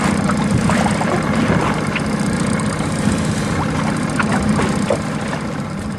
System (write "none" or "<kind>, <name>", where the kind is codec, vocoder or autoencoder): none